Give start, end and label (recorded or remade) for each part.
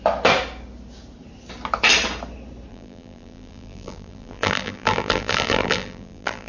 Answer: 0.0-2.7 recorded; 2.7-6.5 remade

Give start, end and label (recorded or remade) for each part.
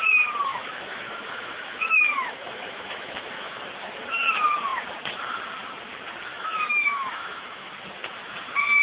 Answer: 0.0-0.5 recorded; 0.5-3.6 remade; 3.6-6.3 recorded; 6.3-7.7 remade; 7.7-8.8 recorded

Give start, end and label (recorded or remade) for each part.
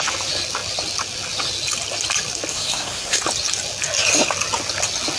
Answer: 0.0-2.5 recorded; 2.5-3.2 remade; 3.2-5.2 recorded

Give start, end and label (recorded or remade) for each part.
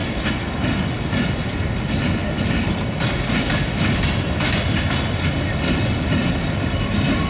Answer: 0.0-7.3 recorded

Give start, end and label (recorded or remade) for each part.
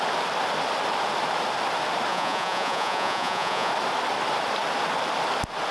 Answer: 0.0-2.1 recorded; 2.1-3.7 remade; 3.7-5.7 recorded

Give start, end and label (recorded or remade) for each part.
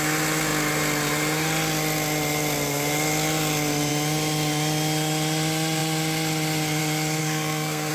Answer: 0.0-7.2 recorded; 7.2-7.9 remade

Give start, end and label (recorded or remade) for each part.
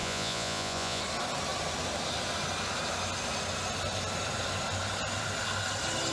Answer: 0.0-1.0 remade; 1.0-6.1 recorded